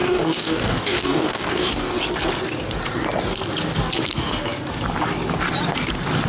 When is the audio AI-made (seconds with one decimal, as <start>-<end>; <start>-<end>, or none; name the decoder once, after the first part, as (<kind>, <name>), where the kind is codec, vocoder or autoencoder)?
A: 0.0-2.0 (codec, DAC)